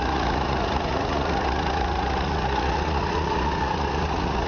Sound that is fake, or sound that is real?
fake